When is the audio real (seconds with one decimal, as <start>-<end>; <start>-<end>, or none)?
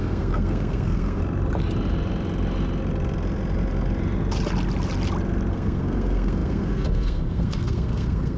1.2-5.5